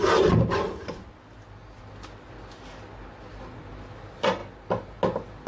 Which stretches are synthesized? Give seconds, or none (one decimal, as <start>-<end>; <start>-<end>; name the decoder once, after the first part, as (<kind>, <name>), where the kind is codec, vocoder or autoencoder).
4.4-5.0 (vocoder, BigVGAN v2)